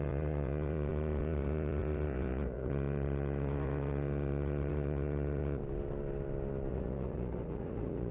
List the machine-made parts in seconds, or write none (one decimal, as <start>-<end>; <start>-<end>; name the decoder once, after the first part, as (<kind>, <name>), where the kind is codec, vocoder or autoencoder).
0.0-5.6 (vocoder, Vocos); 6.7-8.1